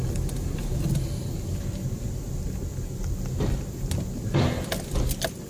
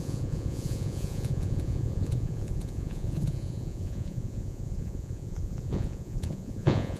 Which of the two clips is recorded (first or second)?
first